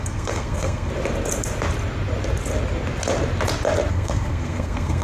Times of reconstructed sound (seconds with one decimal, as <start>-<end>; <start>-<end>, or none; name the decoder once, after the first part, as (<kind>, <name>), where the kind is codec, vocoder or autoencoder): 0.0-0.9 (codec, SNAC); 3.9-5.0